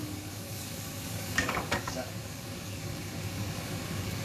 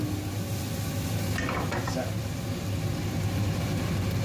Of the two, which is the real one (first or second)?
second